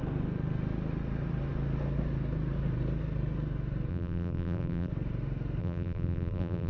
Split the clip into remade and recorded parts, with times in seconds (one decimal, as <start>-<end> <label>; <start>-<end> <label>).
0.0-3.9 recorded; 3.9-4.9 remade; 4.9-5.6 recorded; 5.6-6.7 remade